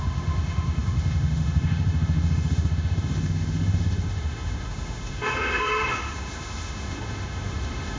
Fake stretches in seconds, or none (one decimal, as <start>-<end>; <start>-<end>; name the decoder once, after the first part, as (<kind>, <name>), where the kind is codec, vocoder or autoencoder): 0.0-8.0 (autoencoder, DAC-VAE)